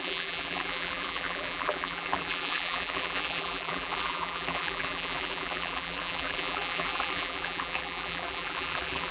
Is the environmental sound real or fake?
fake